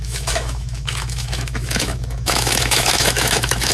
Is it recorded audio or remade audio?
remade